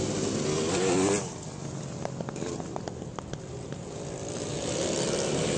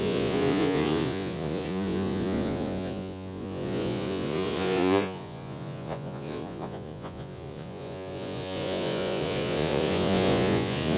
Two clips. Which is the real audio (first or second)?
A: first